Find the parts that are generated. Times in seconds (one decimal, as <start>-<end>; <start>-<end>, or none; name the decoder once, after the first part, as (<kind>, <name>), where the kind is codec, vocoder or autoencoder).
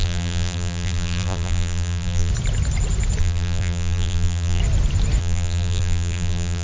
0.0-2.3 (vocoder, BigVGAN v2); 3.2-4.6; 5.2-6.6